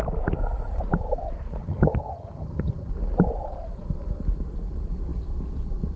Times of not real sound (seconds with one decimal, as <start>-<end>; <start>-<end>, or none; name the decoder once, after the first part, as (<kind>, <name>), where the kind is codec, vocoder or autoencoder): 1.6-2.9 (vocoder, HiFi-GAN)